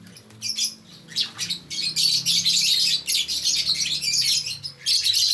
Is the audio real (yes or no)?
yes